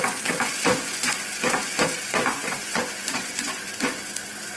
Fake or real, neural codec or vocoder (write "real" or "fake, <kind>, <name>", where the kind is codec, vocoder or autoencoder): fake, vocoder, Vocos